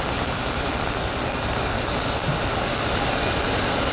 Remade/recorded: recorded